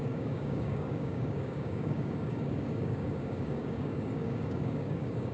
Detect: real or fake fake